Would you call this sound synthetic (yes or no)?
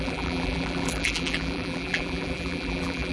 yes